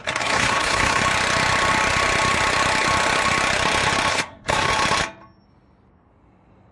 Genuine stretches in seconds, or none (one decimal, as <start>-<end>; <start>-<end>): 1.0-4.1; 4.7-6.7